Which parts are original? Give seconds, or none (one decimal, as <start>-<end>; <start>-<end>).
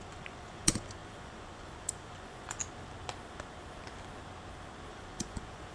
2.6-4.9